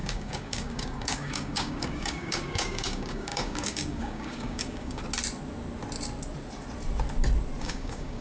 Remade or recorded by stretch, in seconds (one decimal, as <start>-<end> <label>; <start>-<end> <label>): 0.0-5.0 remade; 5.0-7.6 recorded; 7.6-8.2 remade